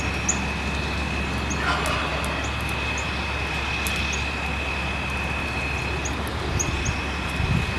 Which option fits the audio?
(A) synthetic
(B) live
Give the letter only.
B